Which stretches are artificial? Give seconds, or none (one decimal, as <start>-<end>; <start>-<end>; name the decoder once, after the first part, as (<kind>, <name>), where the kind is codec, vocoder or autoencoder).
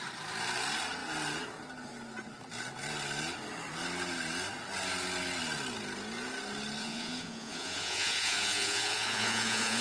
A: 6.8-9.8 (vocoder, Vocos)